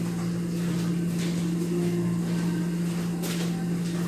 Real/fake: real